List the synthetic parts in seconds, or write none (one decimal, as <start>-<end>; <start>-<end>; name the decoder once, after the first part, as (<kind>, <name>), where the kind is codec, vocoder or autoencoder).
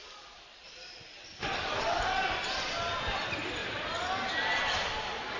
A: none